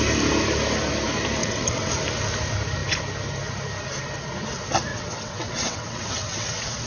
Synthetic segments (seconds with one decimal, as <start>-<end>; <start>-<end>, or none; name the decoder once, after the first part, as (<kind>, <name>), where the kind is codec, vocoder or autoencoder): 1.4-1.9 (vocoder, WaveNeXt); 4.9-6.9